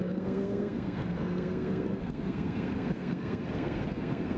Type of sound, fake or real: fake